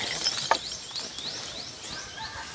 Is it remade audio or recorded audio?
recorded